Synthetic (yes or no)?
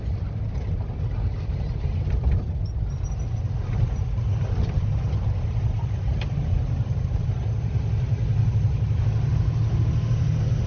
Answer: no